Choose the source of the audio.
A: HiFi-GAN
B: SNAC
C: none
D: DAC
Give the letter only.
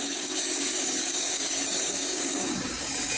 D